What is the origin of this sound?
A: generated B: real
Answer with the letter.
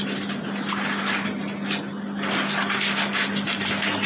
B